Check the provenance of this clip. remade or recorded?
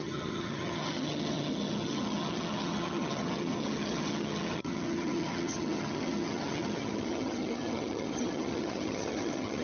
remade